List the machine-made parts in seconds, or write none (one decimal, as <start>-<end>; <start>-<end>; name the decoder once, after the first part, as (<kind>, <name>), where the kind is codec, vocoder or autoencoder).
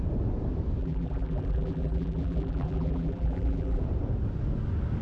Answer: 0.8-3.8 (vocoder, BigVGAN v2)